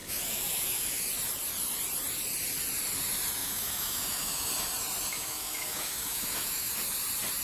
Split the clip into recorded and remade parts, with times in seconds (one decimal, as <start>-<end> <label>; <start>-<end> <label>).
0.0-1.1 remade; 1.1-3.4 recorded; 3.4-4.5 remade; 4.5-5.1 recorded; 5.1-6.7 remade; 6.7-7.4 recorded